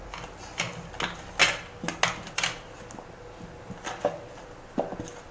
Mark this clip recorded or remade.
recorded